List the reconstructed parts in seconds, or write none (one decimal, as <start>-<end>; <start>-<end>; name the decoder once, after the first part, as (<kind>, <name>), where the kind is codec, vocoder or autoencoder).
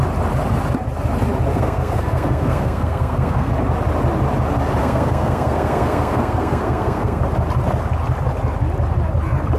1.5-3.5 (codec, SNAC); 4.8-7.2